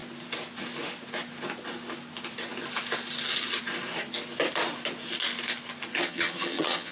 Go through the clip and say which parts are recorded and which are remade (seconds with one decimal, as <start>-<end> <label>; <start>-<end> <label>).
0.0-6.0 recorded; 6.0-6.9 remade